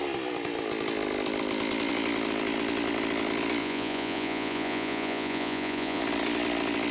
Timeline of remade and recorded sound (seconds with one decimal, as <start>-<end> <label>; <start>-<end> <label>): 0.0-3.6 recorded; 3.6-6.0 remade; 6.0-6.9 recorded